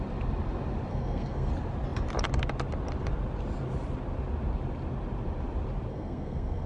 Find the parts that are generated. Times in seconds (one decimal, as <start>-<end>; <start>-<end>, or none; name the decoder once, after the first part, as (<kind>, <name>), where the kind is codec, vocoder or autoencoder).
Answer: 0.9-1.5 (codec, SNAC); 5.9-6.7